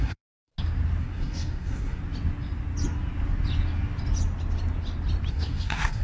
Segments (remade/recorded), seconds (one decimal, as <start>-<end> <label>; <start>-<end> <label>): 0.0-0.5 remade; 0.5-1.0 recorded; 1.0-2.0 remade; 2.0-5.3 recorded; 5.3-6.0 remade